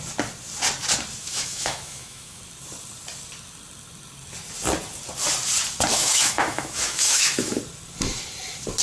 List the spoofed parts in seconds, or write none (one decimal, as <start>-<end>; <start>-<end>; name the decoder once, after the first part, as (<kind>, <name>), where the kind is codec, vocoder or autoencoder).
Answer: 1.2-2.4 (autoencoder, DAC-VAE); 5.9-7.6